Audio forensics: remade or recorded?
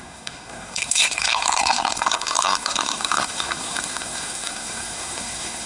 remade